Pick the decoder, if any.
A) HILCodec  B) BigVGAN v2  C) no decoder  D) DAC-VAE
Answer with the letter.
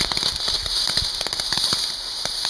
C